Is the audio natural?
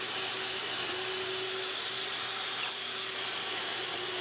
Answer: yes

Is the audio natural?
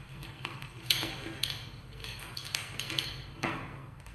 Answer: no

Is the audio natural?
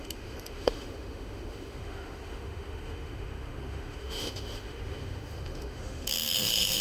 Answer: no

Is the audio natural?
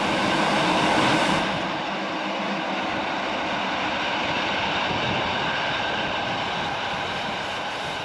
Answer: yes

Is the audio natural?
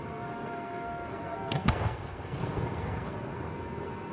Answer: no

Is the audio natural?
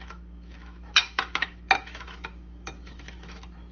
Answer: no